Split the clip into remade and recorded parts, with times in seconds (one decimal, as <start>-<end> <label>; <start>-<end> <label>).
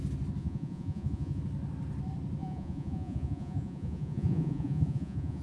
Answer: 0.0-0.4 recorded; 0.4-1.4 remade; 1.4-2.4 recorded; 2.4-5.4 remade